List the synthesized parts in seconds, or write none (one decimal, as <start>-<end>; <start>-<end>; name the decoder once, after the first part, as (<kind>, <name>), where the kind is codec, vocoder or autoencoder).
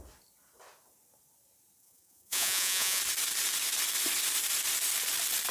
1.8-3.0 (vocoder, Vocos)